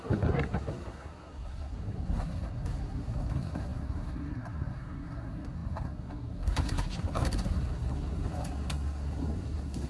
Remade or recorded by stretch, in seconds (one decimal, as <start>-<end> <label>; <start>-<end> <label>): 0.0-9.9 remade